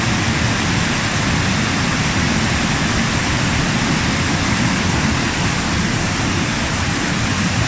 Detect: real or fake real